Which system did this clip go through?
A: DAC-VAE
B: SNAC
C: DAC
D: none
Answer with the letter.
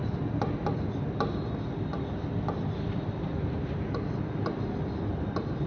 D